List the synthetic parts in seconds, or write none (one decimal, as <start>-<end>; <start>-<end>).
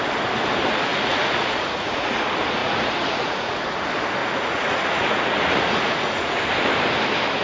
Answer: 0.9-2.2; 2.6-3.6; 4.2-6.4